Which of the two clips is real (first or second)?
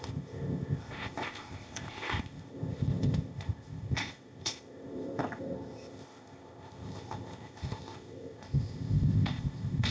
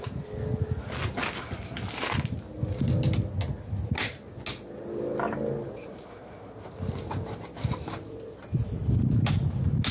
second